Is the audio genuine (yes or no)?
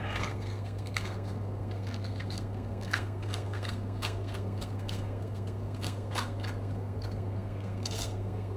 no